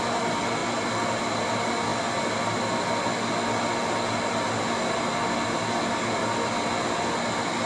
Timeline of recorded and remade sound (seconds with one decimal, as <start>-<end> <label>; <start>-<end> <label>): 0.0-7.7 recorded